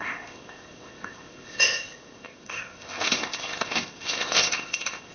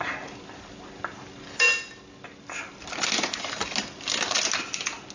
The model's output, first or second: first